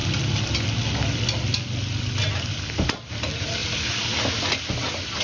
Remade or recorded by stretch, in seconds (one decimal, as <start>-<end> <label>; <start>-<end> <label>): 0.0-5.2 recorded